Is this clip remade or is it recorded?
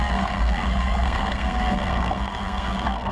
remade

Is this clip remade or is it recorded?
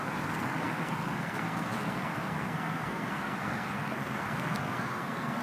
remade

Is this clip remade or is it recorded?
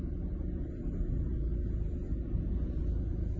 recorded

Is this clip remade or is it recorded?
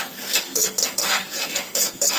remade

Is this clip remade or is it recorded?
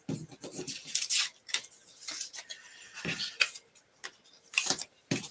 recorded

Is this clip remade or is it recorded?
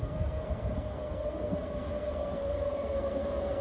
remade